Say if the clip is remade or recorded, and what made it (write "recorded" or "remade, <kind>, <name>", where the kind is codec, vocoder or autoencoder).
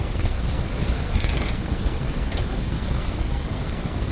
remade, codec, SNAC